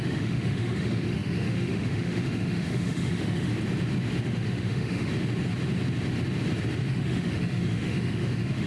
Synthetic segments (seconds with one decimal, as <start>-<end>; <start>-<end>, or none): 0.0-3.5; 4.2-5.1; 6.9-8.7